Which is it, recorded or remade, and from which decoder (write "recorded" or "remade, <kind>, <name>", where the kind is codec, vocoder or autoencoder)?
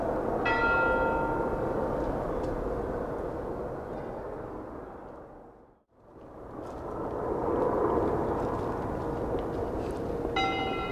recorded